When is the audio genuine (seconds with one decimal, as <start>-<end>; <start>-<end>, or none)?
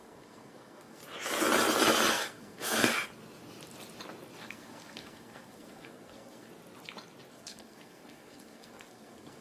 1.0-2.1; 2.9-4.4; 6.5-7.3